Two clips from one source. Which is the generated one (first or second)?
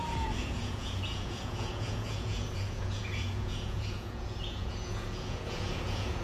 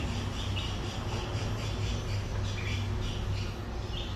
first